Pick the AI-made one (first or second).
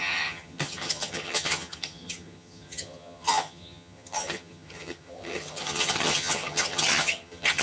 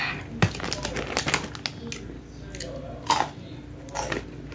first